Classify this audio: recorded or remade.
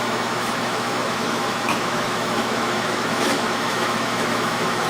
remade